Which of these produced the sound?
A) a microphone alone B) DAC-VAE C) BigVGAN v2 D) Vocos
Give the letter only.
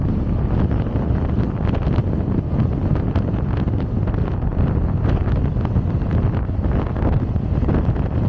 A